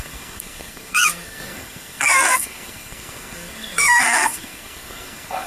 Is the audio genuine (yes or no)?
no